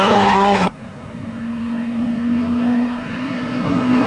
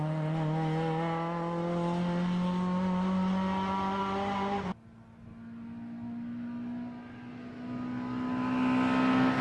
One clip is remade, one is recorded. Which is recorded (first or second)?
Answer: second